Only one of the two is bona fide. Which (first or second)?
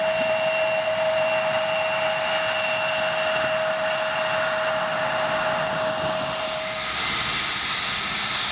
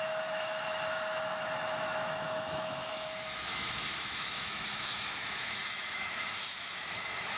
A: first